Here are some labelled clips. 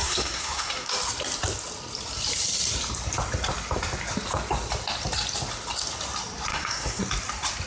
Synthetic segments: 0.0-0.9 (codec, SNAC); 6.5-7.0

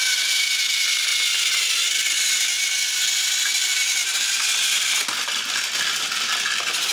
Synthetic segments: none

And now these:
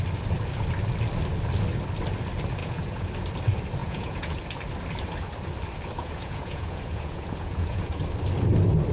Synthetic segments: 2.6-3.1 (vocoder, Vocos); 3.8-4.4; 6.0-8.0

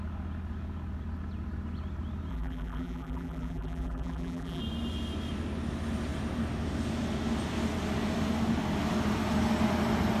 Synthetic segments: 2.3-4.6 (vocoder, BigVGAN v2)